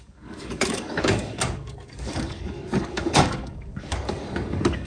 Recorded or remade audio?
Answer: remade